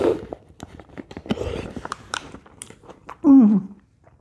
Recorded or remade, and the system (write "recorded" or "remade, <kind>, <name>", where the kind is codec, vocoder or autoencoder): remade, vocoder, BigVGAN v2